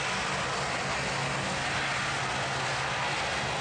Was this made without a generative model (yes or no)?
yes